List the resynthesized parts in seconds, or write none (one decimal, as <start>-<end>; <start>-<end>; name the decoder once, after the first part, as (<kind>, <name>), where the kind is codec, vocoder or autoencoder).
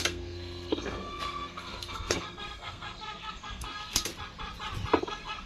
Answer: 0.0-4.1 (codec, SNAC); 5.0-5.5